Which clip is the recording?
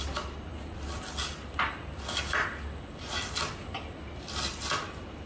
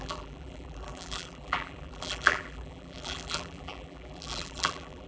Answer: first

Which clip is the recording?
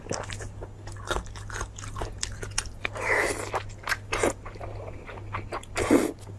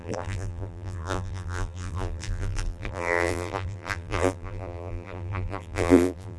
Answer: first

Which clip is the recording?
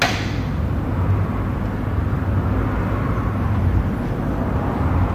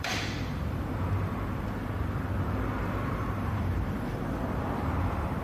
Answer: first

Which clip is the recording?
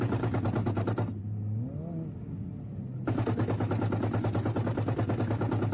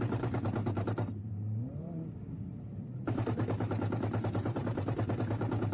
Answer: first